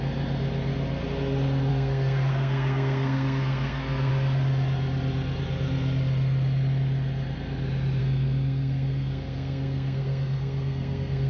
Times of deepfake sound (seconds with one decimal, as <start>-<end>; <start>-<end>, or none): 1.7-4.1; 8.0-11.3